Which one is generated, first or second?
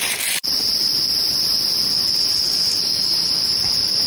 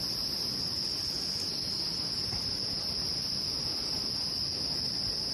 first